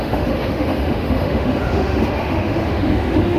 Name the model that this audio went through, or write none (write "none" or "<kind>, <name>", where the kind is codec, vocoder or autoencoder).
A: autoencoder, DAC-VAE